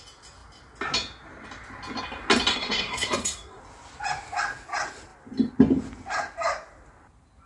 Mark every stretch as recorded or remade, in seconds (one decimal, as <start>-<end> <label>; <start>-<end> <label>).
0.0-2.5 recorded; 2.5-3.6 remade; 3.6-7.5 recorded